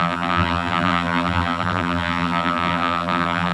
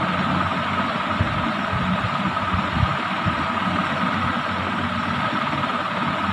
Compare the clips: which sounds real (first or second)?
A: second